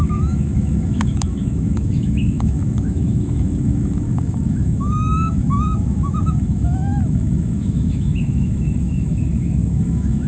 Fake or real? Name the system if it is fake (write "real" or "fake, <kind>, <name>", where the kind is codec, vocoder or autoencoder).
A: fake, autoencoder, DAC-VAE